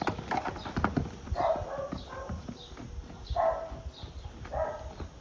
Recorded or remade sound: recorded